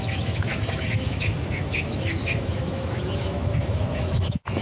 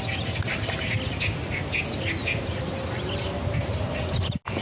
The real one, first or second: second